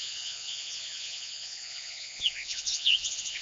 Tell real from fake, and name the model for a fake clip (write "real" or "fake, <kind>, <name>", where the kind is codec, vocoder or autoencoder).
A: fake, vocoder, Vocos